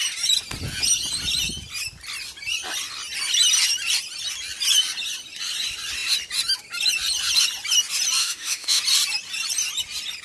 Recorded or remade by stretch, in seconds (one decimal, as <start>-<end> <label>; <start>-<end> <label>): 0.0-8.2 recorded; 8.2-8.8 remade; 8.8-10.2 recorded